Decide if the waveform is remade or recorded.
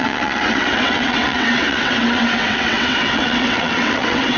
remade